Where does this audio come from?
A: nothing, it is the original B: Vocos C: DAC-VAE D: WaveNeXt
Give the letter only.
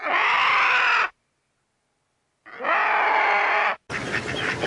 A